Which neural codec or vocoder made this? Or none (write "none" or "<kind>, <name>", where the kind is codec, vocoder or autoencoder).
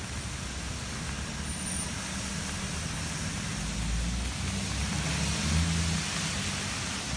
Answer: none